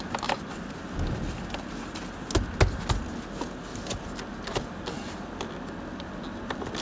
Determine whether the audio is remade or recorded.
recorded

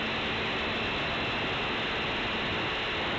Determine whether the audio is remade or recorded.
recorded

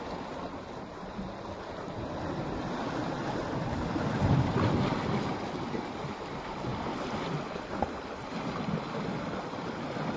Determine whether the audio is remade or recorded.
recorded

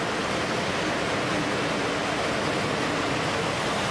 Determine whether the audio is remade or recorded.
recorded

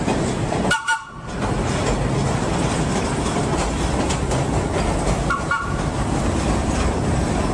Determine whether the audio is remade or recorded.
recorded